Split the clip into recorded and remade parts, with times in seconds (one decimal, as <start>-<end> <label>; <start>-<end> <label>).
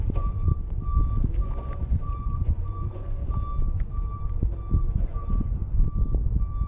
0.0-0.5 remade; 0.5-1.4 recorded; 1.4-3.2 remade; 3.2-4.8 recorded; 4.8-5.6 remade; 5.6-6.7 recorded